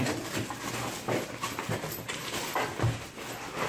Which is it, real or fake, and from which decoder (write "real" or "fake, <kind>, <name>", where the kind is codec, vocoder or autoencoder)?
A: real